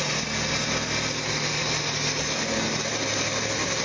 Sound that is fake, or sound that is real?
real